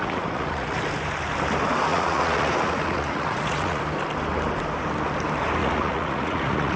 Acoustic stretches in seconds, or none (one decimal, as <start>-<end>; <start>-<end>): 0.8-1.9; 3.8-5.6